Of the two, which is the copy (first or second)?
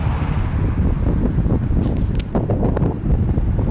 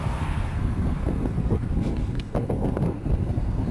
second